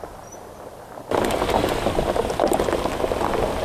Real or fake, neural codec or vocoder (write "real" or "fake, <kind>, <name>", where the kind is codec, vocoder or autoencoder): real